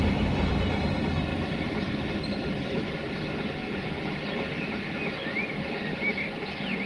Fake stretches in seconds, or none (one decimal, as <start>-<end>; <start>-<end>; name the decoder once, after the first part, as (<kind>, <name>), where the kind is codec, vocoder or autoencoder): 1.3-3.1 (vocoder, BigVGAN v2)